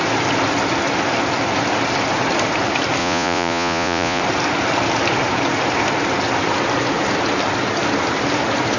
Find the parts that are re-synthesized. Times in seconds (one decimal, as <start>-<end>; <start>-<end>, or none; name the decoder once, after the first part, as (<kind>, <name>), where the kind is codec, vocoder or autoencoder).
3.0-4.2 (vocoder, Vocos)